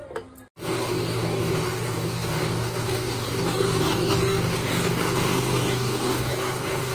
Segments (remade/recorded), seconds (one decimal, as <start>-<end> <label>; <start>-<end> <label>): 0.0-0.6 recorded; 0.6-6.9 remade